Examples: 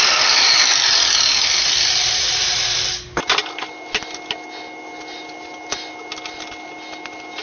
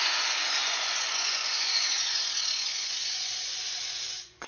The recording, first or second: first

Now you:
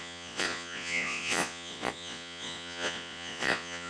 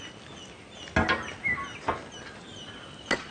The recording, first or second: second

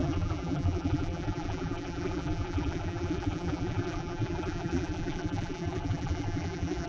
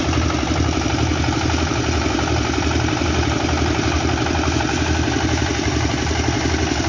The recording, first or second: second